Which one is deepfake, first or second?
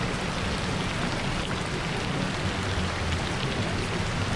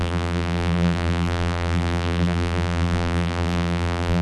second